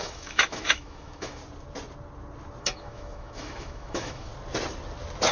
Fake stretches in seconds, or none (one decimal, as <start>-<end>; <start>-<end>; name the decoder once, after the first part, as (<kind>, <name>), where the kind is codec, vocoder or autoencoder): 0.0-1.4 (autoencoder, DAC-VAE); 2.6-4.3